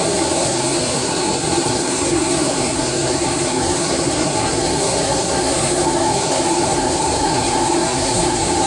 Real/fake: fake